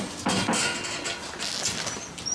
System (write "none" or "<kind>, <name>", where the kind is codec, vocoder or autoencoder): none